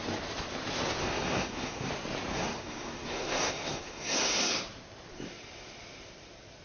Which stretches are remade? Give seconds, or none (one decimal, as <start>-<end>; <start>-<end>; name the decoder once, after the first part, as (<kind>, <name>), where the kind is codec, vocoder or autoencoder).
1.0-1.9 (codec, SNAC); 2.3-4.4